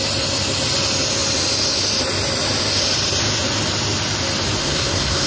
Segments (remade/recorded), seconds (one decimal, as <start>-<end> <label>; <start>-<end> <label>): 0.0-4.6 recorded; 4.6-5.3 remade